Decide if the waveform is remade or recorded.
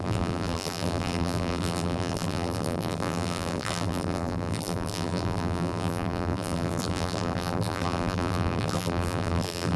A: remade